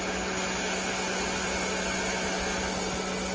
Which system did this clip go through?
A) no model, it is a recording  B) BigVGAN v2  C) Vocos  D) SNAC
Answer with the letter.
A